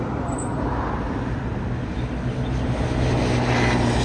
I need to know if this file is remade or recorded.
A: recorded